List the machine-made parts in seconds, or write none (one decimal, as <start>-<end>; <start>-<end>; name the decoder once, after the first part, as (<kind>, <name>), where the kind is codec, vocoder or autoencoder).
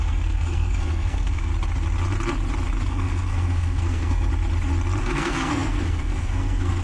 0.0-1.5 (codec, SNAC); 2.9-4.3; 5.0-6.8